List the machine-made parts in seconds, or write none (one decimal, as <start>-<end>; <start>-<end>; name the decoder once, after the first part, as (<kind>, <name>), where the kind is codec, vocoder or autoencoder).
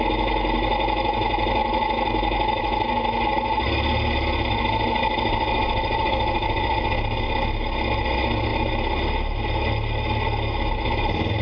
none